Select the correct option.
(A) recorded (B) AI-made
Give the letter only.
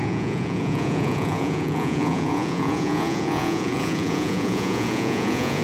B